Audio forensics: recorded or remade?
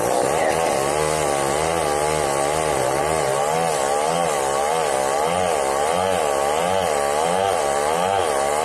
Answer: recorded